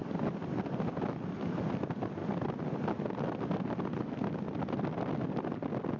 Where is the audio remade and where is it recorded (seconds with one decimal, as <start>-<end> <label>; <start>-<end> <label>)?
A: 0.0-6.0 recorded